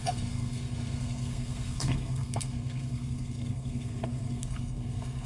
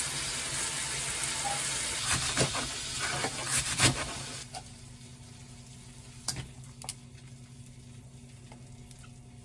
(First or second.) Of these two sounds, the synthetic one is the first